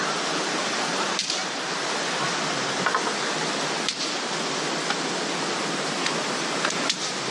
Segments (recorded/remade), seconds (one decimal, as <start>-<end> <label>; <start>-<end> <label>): 0.0-7.3 recorded